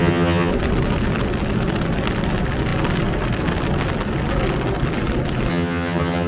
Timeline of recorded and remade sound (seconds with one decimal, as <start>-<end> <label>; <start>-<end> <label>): 0.0-0.5 remade; 0.5-5.5 recorded; 5.5-6.3 remade